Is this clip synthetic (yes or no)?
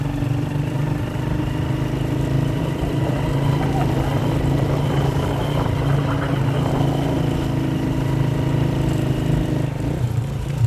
no